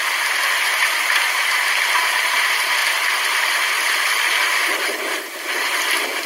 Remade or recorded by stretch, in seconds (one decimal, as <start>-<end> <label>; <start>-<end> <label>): 0.0-6.3 recorded